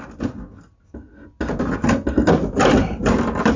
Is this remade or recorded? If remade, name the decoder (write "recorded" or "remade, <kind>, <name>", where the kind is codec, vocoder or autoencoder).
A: recorded